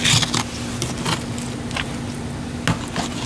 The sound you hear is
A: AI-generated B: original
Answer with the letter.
B